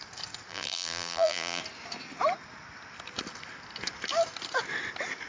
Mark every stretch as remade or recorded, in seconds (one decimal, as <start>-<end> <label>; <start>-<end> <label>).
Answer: 0.0-0.5 recorded; 0.5-1.6 remade; 1.6-5.3 recorded